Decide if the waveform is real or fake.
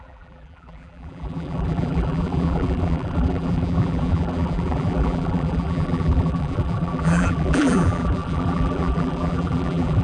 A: fake